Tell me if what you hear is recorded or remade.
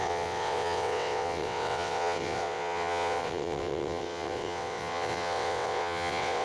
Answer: remade